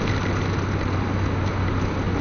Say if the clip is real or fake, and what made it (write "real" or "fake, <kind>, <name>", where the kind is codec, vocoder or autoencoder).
real